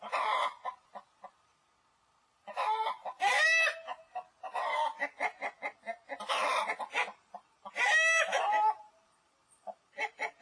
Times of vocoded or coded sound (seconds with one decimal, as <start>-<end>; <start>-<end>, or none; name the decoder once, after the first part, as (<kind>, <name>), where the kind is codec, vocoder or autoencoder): none